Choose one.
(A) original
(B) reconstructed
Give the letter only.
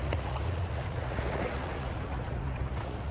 B